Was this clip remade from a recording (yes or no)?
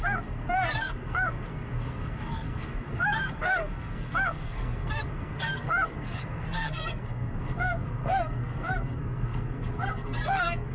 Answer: yes